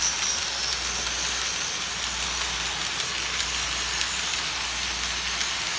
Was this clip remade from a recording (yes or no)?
no